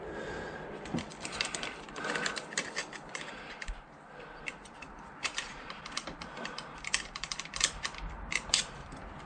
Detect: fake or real fake